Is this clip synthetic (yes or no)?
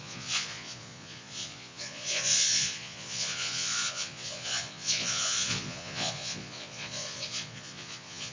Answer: yes